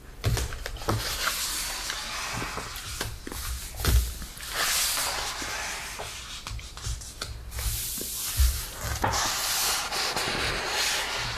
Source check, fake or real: real